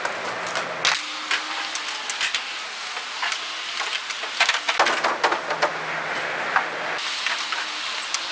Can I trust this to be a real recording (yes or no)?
yes